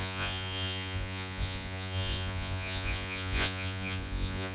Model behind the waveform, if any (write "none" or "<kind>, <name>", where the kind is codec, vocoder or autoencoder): vocoder, Vocos